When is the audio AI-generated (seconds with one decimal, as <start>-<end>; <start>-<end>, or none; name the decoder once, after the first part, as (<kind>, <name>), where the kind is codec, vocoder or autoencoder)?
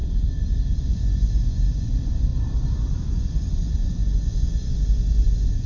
0.8-2.3 (vocoder, Vocos); 3.1-5.7